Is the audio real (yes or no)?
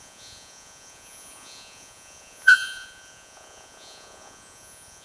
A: no